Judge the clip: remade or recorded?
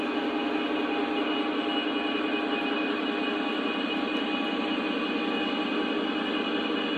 recorded